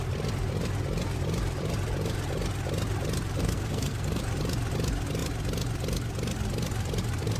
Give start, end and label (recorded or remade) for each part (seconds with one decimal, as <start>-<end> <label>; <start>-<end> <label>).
0.0-3.4 recorded; 3.4-4.2 remade; 4.2-7.4 recorded